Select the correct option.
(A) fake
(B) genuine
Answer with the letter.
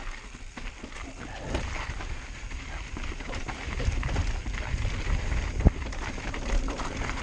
B